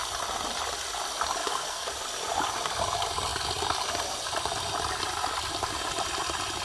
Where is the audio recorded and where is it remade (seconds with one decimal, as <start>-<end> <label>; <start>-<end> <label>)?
0.0-1.4 recorded; 1.4-1.9 remade; 1.9-6.6 recorded